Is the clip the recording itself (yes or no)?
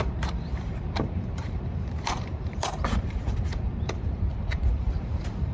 no